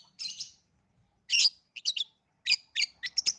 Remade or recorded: recorded